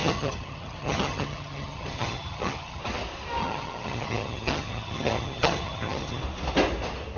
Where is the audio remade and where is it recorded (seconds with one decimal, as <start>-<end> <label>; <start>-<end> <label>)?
0.0-2.8 remade; 2.8-3.4 recorded; 3.4-6.2 remade; 6.2-7.2 recorded